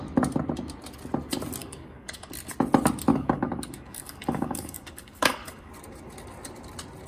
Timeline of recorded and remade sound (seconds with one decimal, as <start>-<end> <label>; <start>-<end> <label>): 0.0-1.6 recorded; 1.6-2.3 remade; 2.3-3.1 recorded; 3.1-5.7 remade; 5.7-7.1 recorded